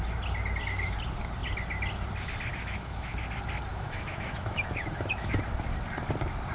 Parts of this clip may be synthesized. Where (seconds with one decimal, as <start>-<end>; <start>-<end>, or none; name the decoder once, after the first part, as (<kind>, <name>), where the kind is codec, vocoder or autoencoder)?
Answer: 2.5-3.1 (autoencoder, DAC-VAE); 3.7-5.4